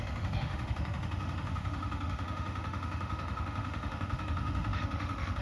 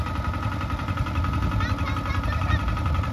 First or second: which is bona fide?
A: second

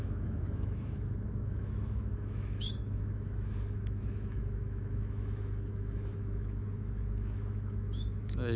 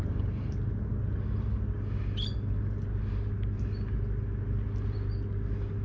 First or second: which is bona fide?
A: second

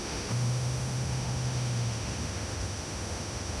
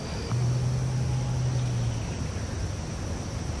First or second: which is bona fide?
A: second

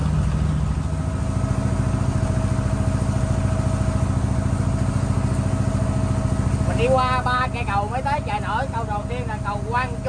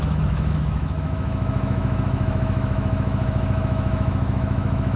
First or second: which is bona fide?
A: first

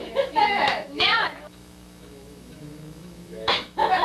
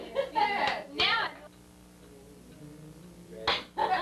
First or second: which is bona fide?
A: second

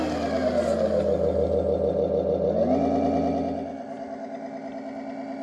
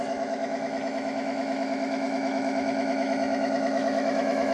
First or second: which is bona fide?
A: first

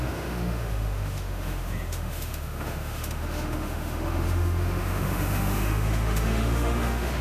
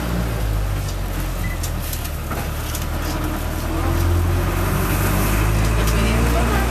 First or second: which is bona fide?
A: second